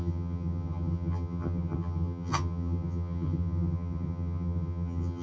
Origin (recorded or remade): remade